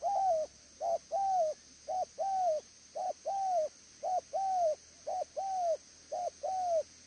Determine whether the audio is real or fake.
real